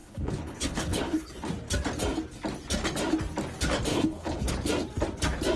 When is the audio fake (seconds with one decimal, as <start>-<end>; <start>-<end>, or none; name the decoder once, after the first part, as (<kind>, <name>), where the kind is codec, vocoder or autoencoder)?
0.0-1.5 (codec, HILCodec); 3.9-4.5